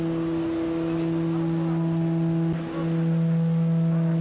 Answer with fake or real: real